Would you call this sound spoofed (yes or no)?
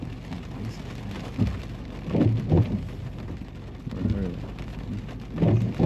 no